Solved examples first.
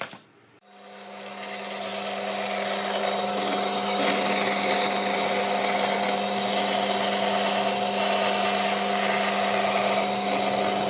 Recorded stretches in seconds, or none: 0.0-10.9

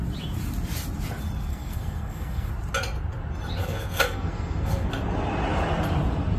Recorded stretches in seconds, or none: 0.0-1.5; 2.5-3.6; 4.9-6.4

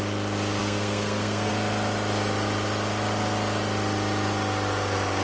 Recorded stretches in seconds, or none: 0.0-0.6; 1.5-5.2

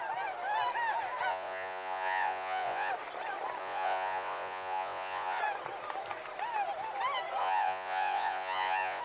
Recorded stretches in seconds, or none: 0.0-1.3; 2.9-3.6; 5.4-7.4